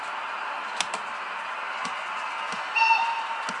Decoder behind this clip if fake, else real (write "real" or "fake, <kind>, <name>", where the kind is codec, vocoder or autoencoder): real